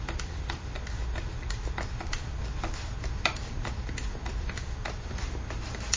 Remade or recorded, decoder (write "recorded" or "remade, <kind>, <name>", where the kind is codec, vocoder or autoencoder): recorded